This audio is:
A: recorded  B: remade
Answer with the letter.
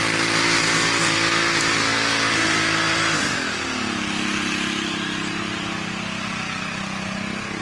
A